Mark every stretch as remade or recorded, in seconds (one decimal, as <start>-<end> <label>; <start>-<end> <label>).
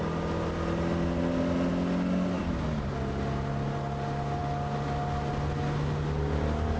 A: 0.0-6.8 recorded